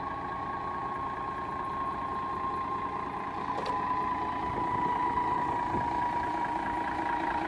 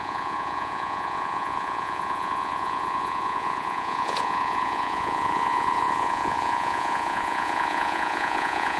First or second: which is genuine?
first